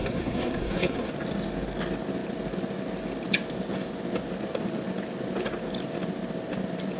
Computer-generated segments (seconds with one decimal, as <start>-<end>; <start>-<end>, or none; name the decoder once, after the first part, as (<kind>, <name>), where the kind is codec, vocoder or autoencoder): 0.0-1.1 (codec, SNAC)